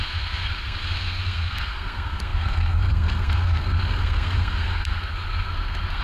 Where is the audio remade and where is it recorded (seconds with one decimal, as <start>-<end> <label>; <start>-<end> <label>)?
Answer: 0.0-6.0 remade